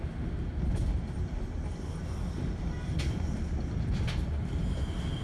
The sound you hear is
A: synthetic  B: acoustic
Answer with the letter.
B